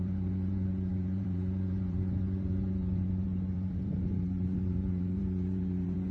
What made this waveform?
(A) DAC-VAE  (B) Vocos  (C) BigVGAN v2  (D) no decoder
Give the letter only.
C